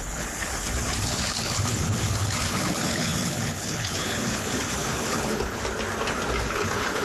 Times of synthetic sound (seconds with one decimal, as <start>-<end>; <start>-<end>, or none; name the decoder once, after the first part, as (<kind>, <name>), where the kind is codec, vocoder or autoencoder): 0.0-5.6 (codec, HILCodec); 6.5-7.0